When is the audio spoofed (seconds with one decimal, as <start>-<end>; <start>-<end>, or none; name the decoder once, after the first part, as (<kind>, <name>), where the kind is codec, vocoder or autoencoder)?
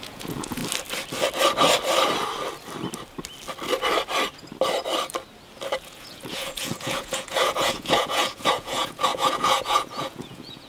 0.0-0.6 (vocoder, Vocos); 5.8-10.7